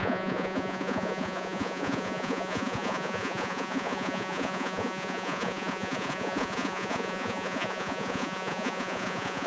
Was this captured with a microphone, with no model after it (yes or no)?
no